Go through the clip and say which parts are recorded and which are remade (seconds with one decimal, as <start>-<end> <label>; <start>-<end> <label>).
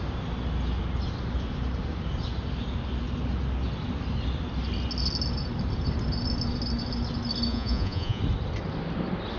0.0-7.5 recorded; 7.5-8.2 remade; 8.2-9.4 recorded